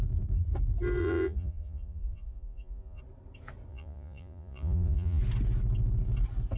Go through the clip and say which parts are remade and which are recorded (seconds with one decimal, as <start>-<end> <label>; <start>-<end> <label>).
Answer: 0.0-1.0 recorded; 1.0-3.0 remade; 3.0-3.7 recorded; 3.7-5.2 remade; 5.2-6.6 recorded